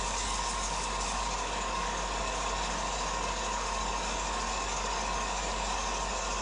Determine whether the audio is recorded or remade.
remade